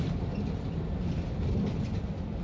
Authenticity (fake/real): real